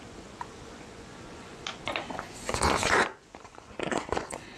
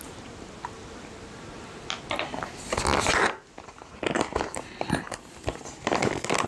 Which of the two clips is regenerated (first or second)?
first